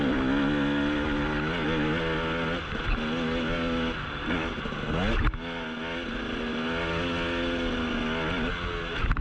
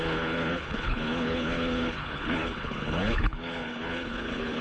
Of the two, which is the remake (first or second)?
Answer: second